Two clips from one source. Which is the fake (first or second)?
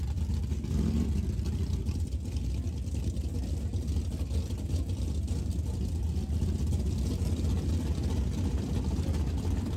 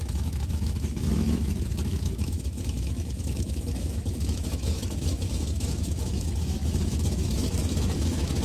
second